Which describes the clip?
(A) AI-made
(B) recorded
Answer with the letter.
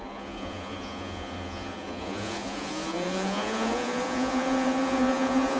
A